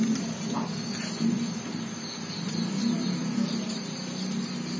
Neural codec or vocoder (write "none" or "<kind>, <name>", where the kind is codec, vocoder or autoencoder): none